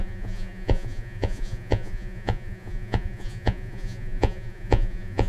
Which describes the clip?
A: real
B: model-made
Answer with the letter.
B